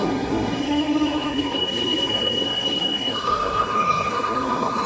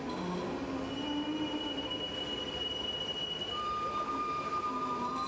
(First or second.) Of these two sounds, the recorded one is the second